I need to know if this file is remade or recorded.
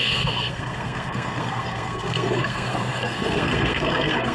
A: remade